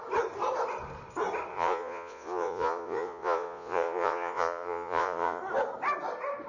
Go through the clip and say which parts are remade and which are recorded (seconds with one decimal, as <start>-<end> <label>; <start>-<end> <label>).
0.0-1.5 recorded; 1.5-5.4 remade; 5.4-6.5 recorded